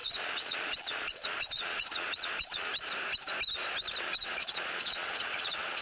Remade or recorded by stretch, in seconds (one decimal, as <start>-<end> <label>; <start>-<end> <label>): 0.0-2.7 remade; 2.7-4.0 recorded; 4.0-5.8 remade